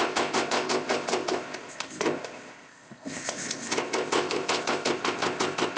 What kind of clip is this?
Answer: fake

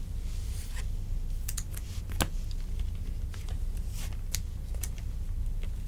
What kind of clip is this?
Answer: real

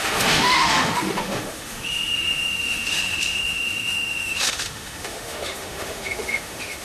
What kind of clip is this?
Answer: fake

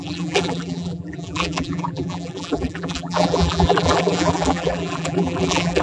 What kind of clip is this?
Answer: fake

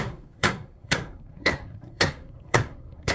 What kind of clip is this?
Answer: fake